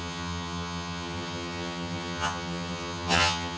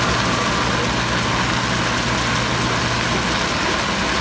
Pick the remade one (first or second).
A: first